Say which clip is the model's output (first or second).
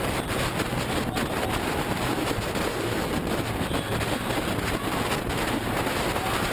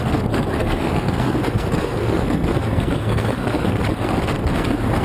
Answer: second